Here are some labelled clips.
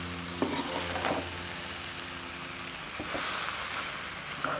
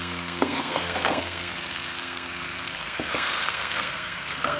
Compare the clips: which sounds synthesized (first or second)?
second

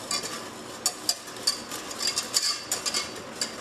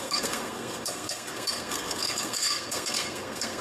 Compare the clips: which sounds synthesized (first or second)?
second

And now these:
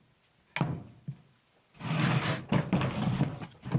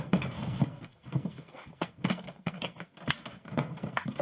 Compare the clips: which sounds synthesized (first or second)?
second